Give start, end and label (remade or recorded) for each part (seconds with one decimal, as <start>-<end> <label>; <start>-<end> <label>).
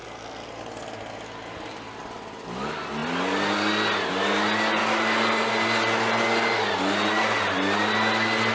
0.0-8.5 recorded